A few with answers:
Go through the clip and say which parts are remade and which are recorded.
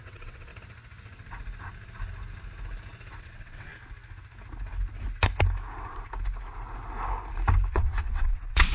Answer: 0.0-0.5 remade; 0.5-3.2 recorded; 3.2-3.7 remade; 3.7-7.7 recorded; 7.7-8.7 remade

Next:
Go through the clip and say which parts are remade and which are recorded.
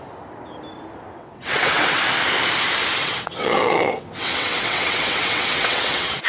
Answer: 0.0-1.2 recorded; 1.2-2.0 remade; 2.0-3.0 recorded; 3.0-6.3 remade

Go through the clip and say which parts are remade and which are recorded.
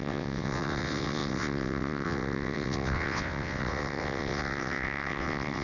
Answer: 0.0-5.6 remade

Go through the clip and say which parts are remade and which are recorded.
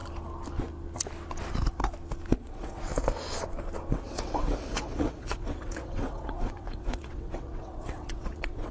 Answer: 0.0-2.4 recorded; 2.4-2.9 remade; 2.9-3.9 recorded; 3.9-8.7 remade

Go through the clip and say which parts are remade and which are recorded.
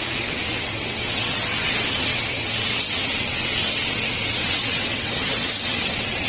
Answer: 0.0-6.3 remade